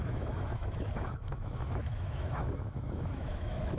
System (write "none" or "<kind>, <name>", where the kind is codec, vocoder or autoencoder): autoencoder, DAC-VAE